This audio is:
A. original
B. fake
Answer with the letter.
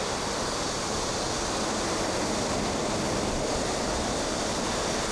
A